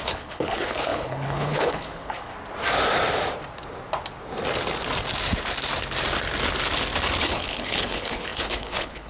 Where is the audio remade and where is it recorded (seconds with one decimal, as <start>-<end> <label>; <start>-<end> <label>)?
0.0-2.3 remade; 2.3-7.2 recorded; 7.2-9.1 remade